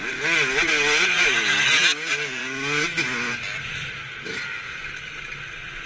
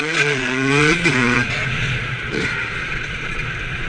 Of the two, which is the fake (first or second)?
second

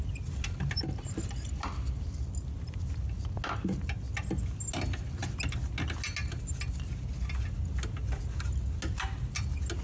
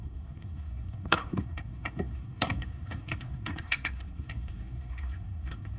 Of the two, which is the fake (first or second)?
second